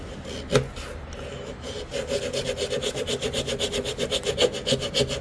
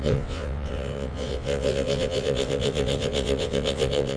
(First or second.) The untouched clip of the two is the first